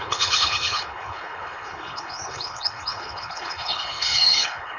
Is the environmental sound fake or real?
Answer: fake